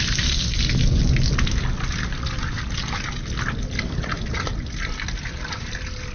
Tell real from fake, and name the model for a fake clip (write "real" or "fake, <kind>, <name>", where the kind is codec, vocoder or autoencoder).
real